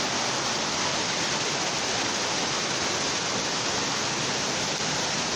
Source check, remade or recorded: recorded